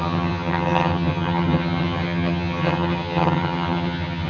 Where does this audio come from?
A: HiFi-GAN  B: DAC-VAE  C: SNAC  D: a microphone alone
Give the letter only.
A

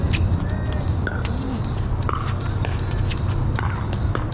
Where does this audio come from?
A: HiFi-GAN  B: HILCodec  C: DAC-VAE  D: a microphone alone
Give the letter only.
D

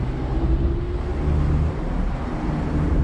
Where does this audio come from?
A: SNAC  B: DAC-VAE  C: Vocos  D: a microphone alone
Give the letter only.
D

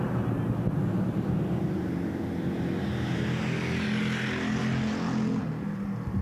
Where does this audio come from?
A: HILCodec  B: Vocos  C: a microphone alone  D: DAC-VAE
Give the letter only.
C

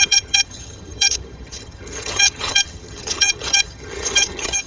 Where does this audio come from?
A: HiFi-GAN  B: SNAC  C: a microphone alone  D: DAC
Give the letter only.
A